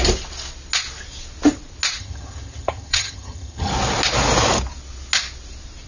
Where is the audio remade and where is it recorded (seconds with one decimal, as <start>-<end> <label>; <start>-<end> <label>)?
0.0-2.0 recorded; 2.0-3.7 remade; 3.7-5.9 recorded